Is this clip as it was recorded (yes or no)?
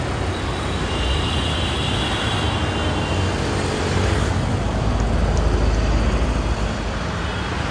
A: yes